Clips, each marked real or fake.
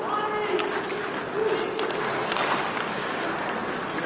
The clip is real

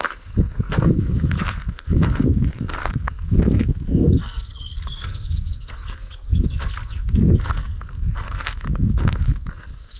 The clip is fake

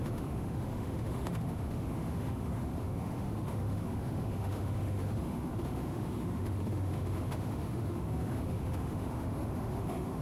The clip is fake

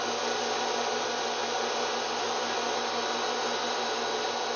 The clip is real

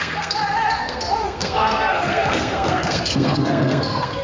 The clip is fake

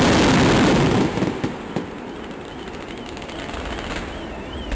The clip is real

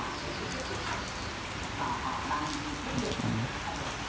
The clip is real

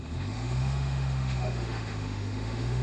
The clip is fake